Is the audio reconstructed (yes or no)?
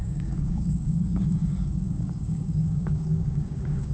yes